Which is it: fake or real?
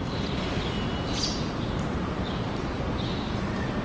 real